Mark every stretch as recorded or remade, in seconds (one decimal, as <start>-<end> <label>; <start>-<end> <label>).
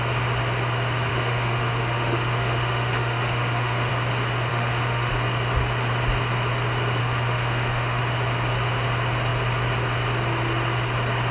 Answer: 0.0-1.1 recorded; 1.1-3.9 remade; 3.9-4.5 recorded; 4.5-5.1 remade; 5.1-7.0 recorded; 7.0-8.0 remade; 8.0-11.3 recorded